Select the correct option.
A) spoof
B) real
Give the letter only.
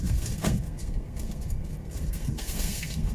A